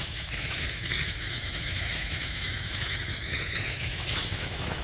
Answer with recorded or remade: remade